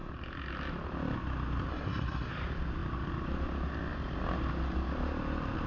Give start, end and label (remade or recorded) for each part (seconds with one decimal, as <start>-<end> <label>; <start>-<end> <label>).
0.0-1.7 recorded; 1.7-2.3 remade; 2.3-5.7 recorded

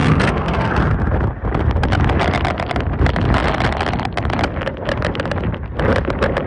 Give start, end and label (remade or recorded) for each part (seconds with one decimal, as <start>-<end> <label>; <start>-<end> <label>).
0.0-0.7 remade; 0.7-6.5 recorded